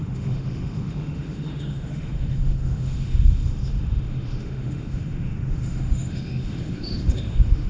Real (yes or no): no